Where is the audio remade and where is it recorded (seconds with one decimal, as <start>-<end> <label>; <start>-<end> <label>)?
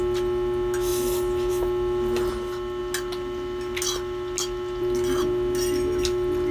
0.0-6.5 recorded